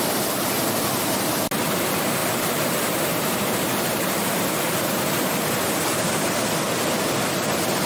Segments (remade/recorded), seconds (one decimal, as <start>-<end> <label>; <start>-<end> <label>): 0.0-2.2 recorded; 2.2-5.5 remade; 5.5-7.9 recorded